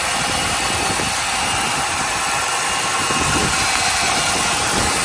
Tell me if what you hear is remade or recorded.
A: recorded